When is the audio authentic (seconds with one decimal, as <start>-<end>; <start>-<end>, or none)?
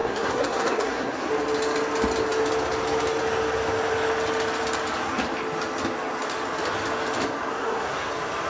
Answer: 1.3-7.5; 8.1-8.5